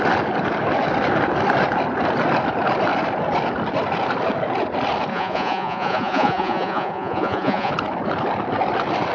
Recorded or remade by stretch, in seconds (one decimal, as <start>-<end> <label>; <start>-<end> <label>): 0.0-5.1 recorded; 5.1-7.7 remade; 7.7-9.1 recorded